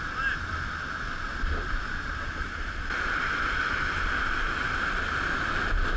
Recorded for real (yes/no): yes